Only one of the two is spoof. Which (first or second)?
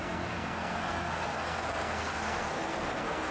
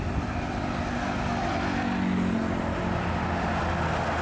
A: first